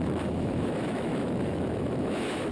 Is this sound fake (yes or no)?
yes